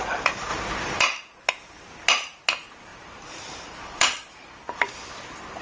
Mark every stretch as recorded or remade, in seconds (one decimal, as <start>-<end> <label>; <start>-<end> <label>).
0.0-2.9 recorded; 2.9-5.1 remade; 5.1-5.6 recorded